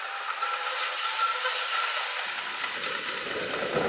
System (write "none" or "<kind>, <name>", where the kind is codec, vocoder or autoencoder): none